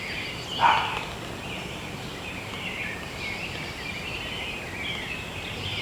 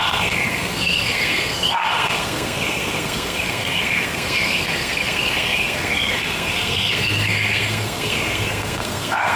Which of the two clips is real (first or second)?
first